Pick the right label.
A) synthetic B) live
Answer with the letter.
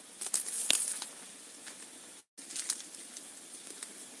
B